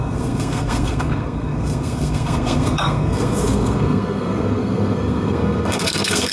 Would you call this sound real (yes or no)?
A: no